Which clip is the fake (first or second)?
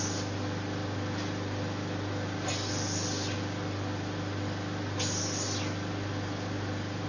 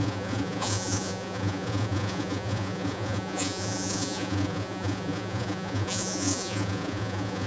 second